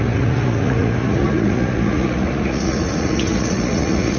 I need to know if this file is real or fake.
fake